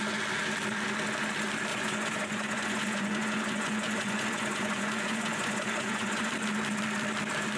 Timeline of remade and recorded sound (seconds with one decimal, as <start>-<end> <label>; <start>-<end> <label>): 0.0-1.7 recorded; 1.7-6.3 remade; 6.3-7.6 recorded